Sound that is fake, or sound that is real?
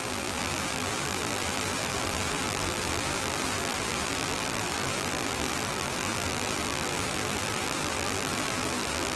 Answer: fake